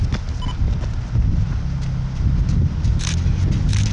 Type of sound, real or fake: real